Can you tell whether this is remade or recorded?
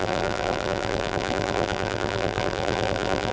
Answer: remade